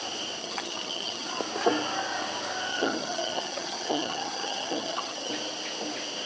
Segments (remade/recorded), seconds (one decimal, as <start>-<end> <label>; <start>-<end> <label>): 0.0-0.4 recorded; 0.4-1.4 remade; 1.4-2.7 recorded; 2.7-5.3 remade; 5.3-6.3 recorded